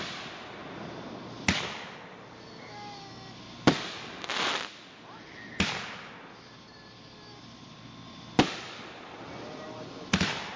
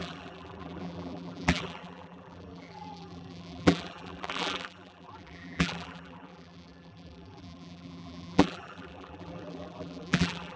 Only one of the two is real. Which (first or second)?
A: first